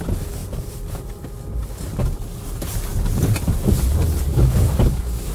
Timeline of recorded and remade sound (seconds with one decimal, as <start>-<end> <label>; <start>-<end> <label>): 0.0-4.3 recorded; 4.3-5.3 remade

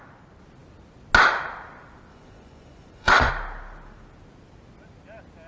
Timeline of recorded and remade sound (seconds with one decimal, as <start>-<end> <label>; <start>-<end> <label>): 0.0-2.1 recorded; 2.1-3.3 remade; 3.3-5.5 recorded

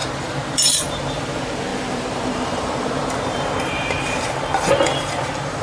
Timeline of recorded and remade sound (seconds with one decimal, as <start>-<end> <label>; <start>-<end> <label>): 0.0-5.6 remade

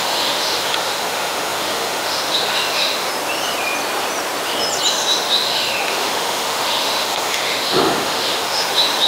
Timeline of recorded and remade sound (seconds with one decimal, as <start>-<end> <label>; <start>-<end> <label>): 0.0-3.1 remade; 3.1-4.9 recorded; 4.9-9.1 remade

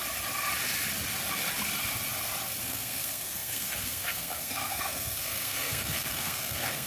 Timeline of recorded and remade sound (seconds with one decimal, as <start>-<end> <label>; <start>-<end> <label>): 0.0-2.6 recorded; 2.6-6.9 remade

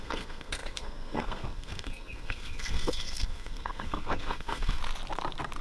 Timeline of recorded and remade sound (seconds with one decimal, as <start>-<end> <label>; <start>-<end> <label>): 0.0-4.8 remade; 4.8-5.6 recorded